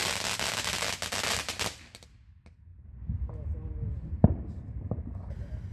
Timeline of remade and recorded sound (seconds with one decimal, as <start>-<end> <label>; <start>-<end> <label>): 0.0-5.7 recorded